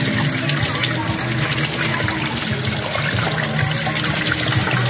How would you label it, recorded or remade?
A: recorded